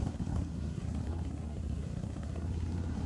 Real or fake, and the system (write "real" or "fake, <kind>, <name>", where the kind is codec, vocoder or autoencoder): fake, codec, SNAC